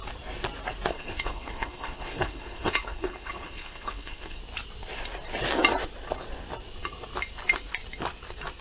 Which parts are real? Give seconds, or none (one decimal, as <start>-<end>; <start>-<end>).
0.0-0.9; 4.4-8.6